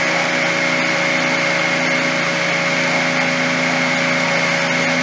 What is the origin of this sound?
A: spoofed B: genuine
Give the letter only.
B